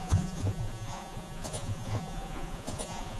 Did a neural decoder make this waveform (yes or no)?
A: yes